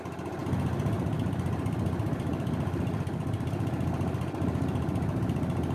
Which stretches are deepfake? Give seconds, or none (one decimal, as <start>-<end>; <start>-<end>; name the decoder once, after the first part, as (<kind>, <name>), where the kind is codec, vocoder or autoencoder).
none